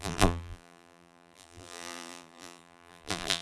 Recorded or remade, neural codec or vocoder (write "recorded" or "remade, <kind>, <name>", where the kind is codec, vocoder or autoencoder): remade, vocoder, BigVGAN v2